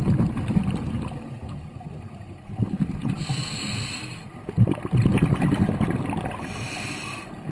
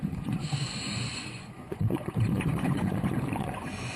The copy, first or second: second